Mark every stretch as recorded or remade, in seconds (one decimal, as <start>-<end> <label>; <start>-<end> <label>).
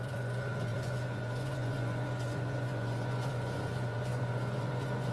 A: 0.0-5.1 remade